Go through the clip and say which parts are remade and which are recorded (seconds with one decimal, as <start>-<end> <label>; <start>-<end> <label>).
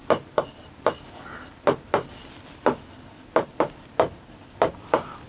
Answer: 0.0-3.1 recorded; 3.1-5.3 remade